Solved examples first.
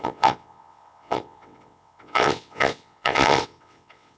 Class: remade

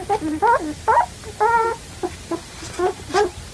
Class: recorded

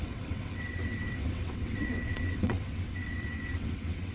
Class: remade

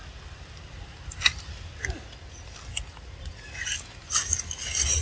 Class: recorded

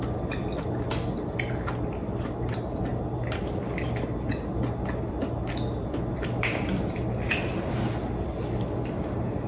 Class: recorded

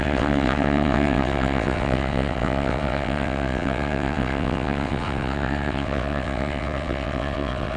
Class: remade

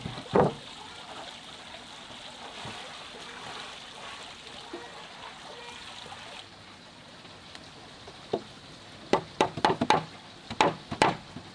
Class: recorded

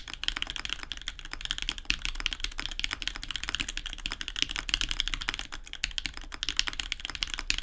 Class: recorded